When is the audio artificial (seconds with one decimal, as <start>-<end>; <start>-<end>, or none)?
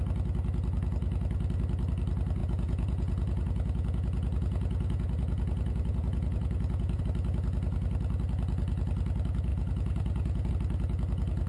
2.4-7.0; 9.5-10.5